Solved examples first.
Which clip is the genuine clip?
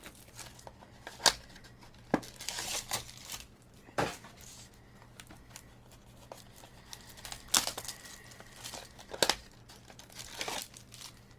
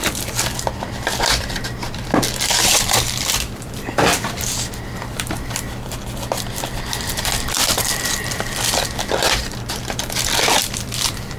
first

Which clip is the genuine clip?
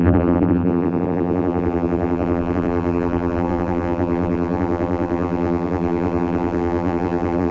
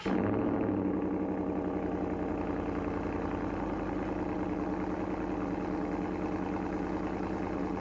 second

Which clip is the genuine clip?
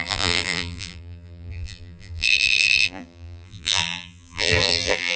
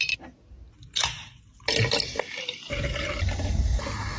second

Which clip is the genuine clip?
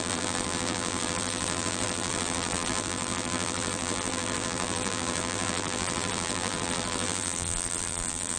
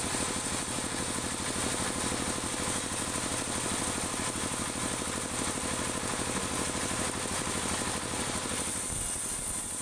second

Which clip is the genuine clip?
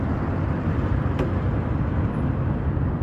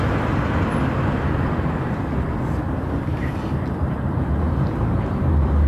second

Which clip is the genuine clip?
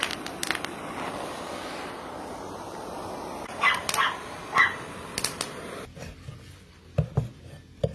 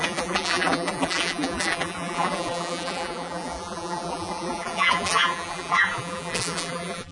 first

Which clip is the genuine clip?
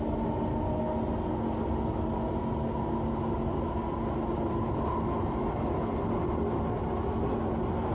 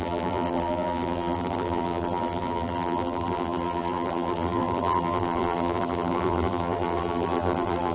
first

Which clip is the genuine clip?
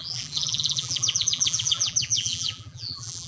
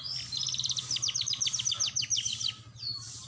second